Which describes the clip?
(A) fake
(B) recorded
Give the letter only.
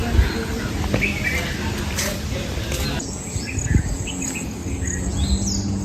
B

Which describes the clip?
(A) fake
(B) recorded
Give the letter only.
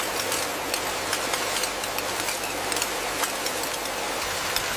B